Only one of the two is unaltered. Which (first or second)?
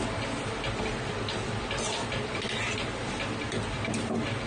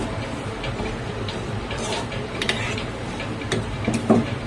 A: first